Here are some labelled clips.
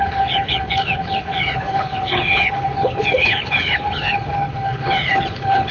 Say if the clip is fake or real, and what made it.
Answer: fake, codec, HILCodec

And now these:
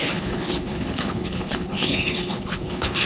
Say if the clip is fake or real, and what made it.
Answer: fake, codec, HILCodec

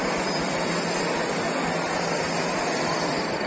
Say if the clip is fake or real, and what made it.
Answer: real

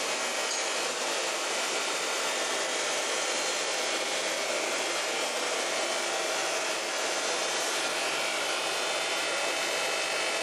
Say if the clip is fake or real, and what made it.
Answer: real